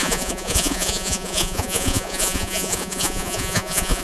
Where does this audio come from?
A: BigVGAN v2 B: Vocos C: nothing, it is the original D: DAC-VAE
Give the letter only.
B